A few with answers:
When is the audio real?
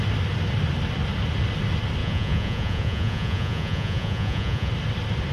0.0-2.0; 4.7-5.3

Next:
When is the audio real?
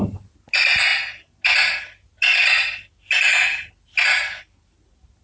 0.0-5.2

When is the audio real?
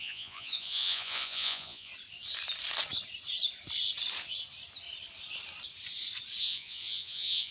1.9-6.4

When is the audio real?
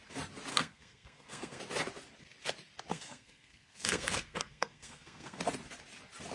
0.0-0.5; 1.6-2.9; 5.4-6.3